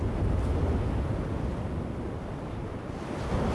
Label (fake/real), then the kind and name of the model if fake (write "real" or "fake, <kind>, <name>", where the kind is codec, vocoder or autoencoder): real